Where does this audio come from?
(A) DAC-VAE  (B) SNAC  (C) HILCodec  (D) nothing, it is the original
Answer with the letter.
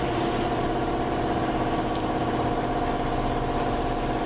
D